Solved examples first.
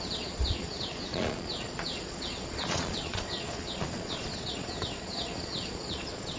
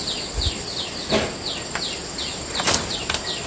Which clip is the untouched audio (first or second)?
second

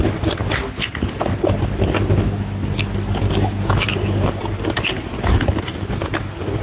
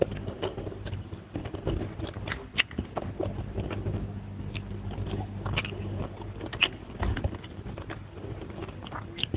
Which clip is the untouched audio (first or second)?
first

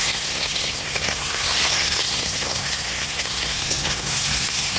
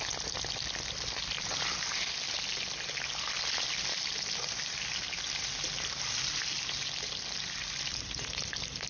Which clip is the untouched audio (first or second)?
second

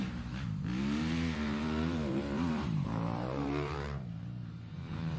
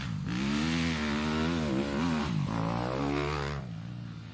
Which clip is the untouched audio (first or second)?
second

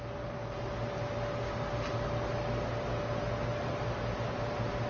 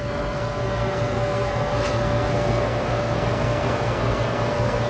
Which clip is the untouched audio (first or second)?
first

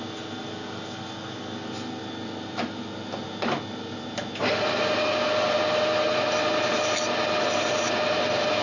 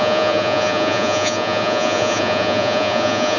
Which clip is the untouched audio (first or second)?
first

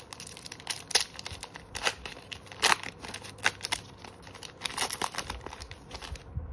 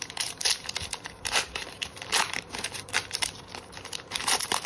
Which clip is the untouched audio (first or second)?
first